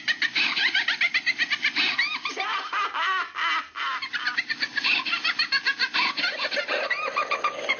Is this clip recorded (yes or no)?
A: yes